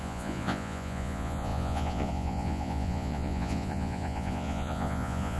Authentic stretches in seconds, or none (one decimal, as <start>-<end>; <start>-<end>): none